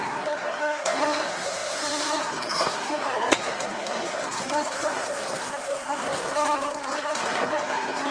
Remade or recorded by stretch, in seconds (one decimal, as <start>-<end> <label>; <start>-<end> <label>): 0.0-8.1 remade